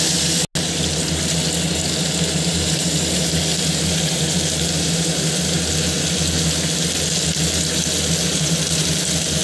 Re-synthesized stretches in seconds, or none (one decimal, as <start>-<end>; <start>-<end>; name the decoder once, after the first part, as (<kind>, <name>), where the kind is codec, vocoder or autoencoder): none